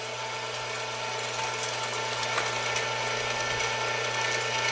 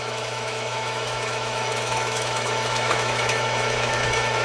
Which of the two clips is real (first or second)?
first